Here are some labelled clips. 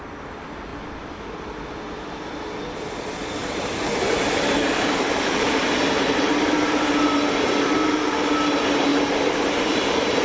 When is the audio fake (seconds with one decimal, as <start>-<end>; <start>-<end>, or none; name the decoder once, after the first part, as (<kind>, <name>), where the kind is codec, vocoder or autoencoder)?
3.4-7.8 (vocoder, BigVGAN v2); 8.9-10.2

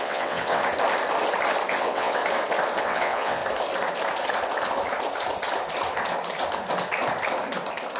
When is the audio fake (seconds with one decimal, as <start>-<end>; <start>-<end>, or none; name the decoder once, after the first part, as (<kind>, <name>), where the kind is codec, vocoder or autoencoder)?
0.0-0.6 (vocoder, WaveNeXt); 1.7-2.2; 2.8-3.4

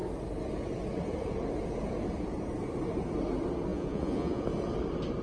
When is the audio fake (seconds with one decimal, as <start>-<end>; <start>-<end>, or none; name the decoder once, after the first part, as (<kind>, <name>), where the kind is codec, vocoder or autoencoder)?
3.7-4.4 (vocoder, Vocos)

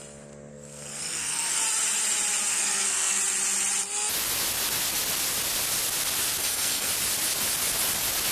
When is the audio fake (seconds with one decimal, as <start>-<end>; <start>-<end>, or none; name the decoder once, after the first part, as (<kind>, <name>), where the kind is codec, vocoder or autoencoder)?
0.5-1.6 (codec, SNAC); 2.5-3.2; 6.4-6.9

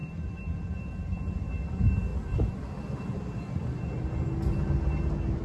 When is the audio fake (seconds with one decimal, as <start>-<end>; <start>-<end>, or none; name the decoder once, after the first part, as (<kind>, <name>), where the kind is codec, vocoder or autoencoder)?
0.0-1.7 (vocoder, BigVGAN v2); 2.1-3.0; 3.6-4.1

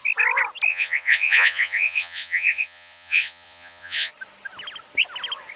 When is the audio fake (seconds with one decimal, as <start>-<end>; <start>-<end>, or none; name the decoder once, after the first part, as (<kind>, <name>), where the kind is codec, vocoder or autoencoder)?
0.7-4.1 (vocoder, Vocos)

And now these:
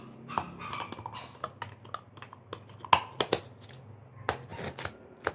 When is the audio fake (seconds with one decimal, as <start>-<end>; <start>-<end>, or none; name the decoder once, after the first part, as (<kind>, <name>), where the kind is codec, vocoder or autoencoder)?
none

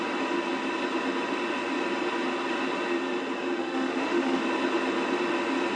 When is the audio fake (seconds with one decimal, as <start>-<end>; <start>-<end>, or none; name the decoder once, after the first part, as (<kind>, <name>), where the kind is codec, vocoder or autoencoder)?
3.6-4.4 (autoencoder, DAC-VAE)